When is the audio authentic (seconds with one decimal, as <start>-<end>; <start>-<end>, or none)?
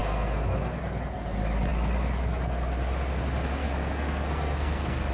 0.8-3.6